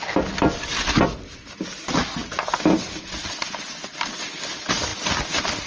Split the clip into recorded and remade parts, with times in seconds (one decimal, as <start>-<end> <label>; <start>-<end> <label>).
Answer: 0.0-5.7 recorded